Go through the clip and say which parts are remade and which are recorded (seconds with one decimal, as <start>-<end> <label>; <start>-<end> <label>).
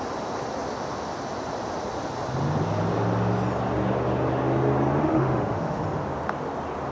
0.0-5.0 recorded; 5.0-5.8 remade; 5.8-6.9 recorded